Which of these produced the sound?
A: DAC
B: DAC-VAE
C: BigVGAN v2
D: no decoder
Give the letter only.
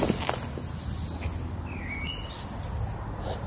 D